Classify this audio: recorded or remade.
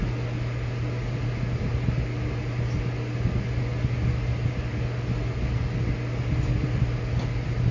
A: recorded